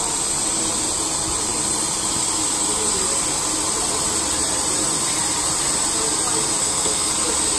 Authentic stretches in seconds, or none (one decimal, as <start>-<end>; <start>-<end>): 0.0-6.6; 7.1-7.6